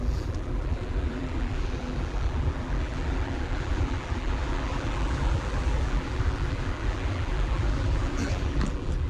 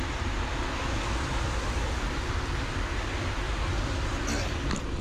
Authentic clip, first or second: second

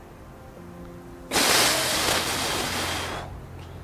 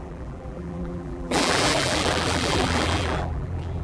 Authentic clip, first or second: first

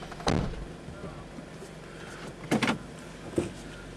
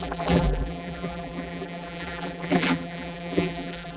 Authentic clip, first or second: first